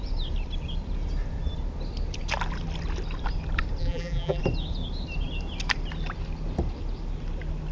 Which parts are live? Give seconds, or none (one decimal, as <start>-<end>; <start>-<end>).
0.0-3.8; 4.4-7.7